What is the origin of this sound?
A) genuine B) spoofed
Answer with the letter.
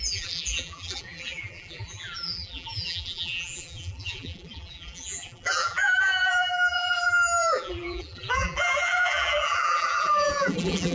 B